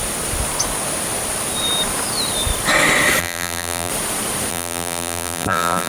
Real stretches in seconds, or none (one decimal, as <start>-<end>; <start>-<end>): 0.0-3.2; 3.9-4.5